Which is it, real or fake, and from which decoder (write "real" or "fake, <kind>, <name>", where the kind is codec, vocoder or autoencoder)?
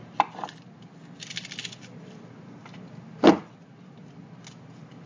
real